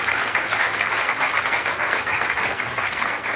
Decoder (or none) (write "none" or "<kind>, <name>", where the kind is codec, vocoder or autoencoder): codec, SNAC